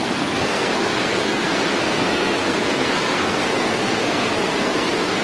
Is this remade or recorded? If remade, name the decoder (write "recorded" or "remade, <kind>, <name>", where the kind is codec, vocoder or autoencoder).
remade, codec, SNAC